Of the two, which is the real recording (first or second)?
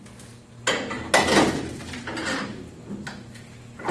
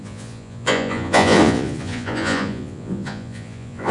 first